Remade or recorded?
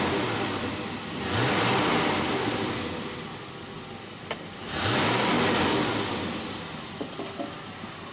recorded